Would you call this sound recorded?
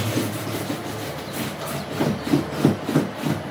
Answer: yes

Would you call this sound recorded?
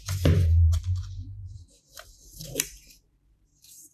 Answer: no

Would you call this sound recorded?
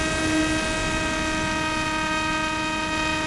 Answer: yes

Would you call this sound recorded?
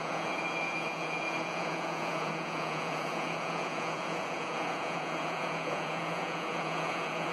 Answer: no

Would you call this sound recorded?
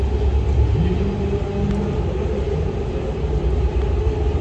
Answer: yes